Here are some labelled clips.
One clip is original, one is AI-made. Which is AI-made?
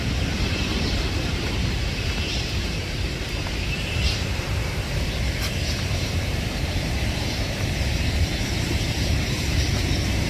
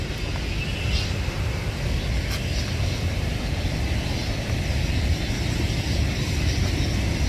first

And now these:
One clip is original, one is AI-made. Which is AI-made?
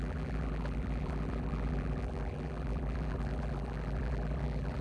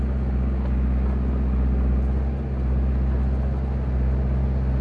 first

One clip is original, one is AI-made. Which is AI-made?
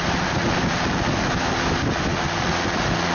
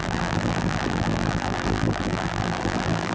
second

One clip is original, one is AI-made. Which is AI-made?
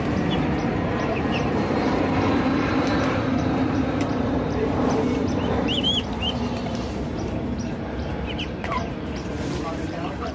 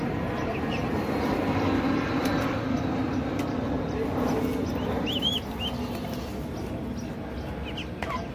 first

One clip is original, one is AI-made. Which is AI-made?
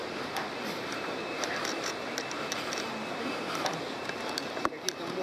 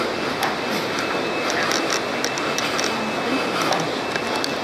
first